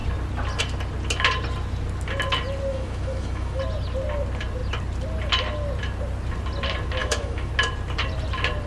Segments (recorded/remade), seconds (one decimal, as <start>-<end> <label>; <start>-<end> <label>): 0.0-2.7 recorded; 2.7-3.6 remade; 3.6-7.0 recorded; 7.0-7.5 remade; 7.5-8.7 recorded